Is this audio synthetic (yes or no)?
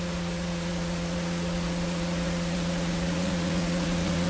yes